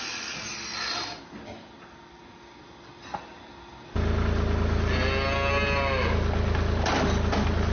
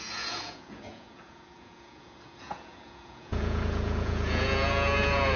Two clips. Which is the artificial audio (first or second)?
second